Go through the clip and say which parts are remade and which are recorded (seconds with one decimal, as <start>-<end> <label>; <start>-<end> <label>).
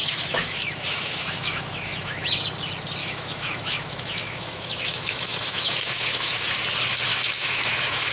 0.0-2.3 remade; 2.3-3.0 recorded; 3.0-6.5 remade; 6.5-7.1 recorded; 7.1-8.1 remade